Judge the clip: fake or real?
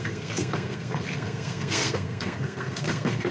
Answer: fake